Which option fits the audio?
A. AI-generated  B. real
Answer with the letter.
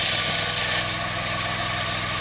B